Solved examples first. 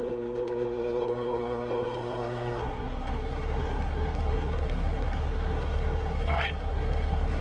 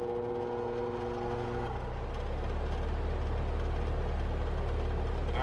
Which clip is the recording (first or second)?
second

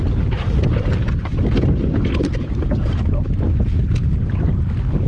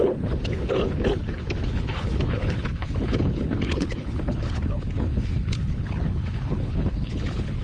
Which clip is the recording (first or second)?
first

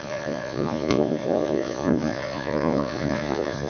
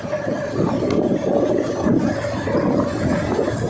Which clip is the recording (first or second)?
second